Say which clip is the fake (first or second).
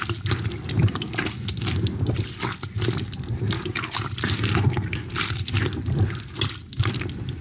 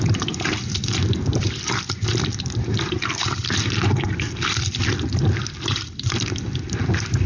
second